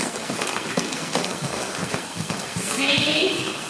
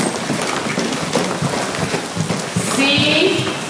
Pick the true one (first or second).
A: second